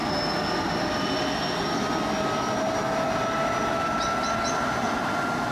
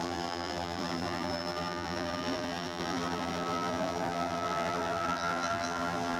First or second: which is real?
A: first